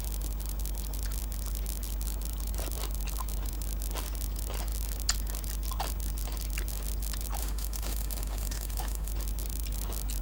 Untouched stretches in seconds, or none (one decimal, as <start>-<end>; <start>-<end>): 0.0-7.4; 9.1-10.2